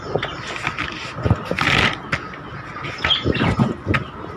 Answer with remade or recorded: recorded